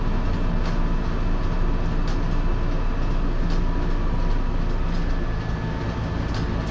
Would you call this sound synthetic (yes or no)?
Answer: no